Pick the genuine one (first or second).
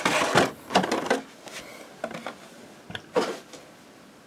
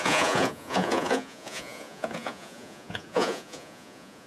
first